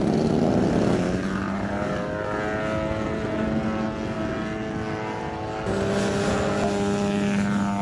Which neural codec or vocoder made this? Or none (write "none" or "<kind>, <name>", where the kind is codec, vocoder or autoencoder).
none